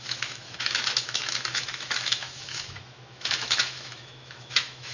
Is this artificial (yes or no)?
yes